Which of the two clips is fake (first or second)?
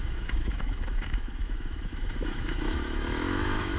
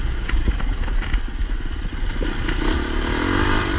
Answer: first